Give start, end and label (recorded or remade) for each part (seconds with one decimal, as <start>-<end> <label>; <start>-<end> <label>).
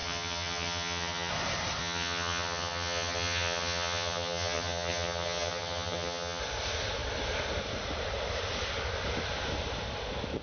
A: 0.0-1.3 remade; 1.3-1.8 recorded; 1.8-6.4 remade; 6.4-10.4 recorded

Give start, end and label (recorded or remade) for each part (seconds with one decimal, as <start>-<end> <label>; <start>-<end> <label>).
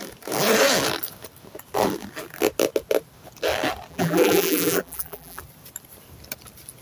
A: 0.0-3.9 recorded; 3.9-5.4 remade; 5.4-6.8 recorded